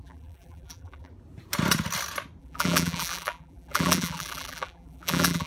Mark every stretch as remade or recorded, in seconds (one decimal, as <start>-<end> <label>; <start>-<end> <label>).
0.0-1.1 remade; 1.1-2.4 recorded; 2.4-5.5 remade

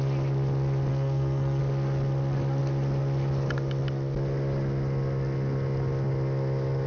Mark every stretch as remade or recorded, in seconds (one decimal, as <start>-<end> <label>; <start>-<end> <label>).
0.0-0.9 recorded; 0.9-1.6 remade; 1.6-6.9 recorded

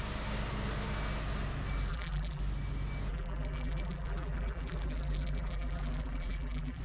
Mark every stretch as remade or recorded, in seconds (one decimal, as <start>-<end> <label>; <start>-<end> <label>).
0.0-1.9 recorded; 1.9-2.4 remade; 2.4-3.1 recorded; 3.1-6.8 remade